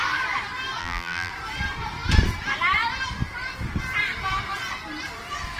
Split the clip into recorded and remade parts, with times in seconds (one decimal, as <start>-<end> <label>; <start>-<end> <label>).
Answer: 0.0-0.8 recorded; 0.8-1.3 remade; 1.3-5.6 recorded